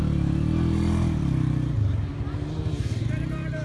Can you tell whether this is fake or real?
real